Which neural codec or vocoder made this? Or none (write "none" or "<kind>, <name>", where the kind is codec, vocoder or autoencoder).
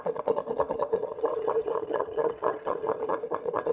vocoder, Vocos